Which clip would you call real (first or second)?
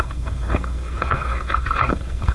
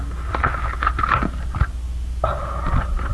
second